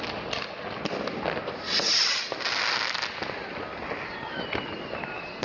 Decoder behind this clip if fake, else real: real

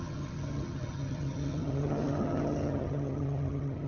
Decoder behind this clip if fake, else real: fake, vocoder, HiFi-GAN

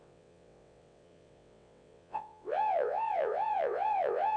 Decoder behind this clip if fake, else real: fake, vocoder, WaveNeXt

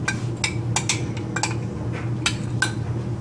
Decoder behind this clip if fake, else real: real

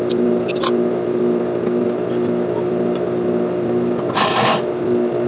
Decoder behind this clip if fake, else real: real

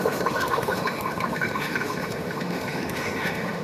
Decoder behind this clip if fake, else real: fake, autoencoder, DAC-VAE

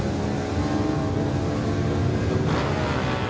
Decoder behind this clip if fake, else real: real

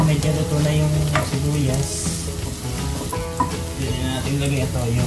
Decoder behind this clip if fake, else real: real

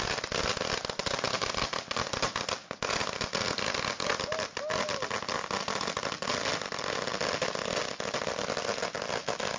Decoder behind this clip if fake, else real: real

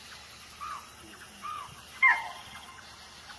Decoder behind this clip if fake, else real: real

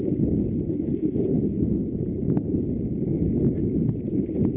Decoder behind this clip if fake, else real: real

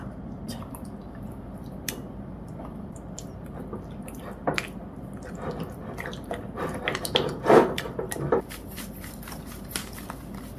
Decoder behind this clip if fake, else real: fake, vocoder, BigVGAN v2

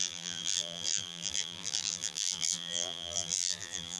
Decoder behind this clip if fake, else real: fake, vocoder, BigVGAN v2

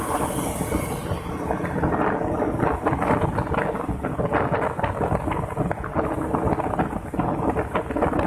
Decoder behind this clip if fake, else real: real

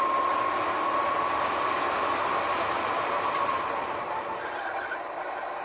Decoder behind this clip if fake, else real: real